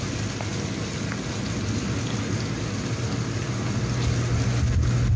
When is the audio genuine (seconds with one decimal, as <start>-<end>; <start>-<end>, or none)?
0.0-5.2